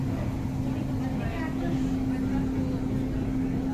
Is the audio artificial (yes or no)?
no